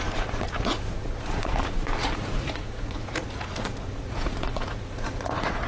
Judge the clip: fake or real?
fake